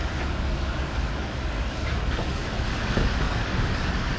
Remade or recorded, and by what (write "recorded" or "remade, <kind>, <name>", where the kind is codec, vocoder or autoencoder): remade, codec, DAC